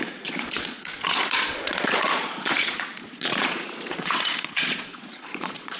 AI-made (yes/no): yes